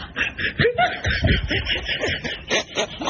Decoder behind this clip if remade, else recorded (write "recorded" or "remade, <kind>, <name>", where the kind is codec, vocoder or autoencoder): recorded